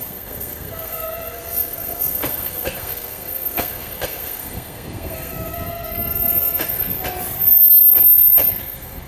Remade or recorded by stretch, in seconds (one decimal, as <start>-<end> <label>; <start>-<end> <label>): 0.0-6.9 remade; 6.9-8.5 recorded; 8.5-9.1 remade